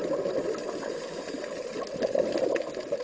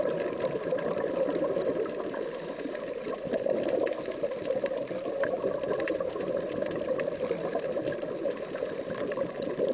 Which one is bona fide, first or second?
first